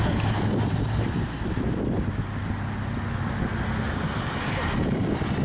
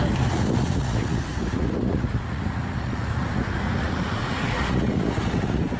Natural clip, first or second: first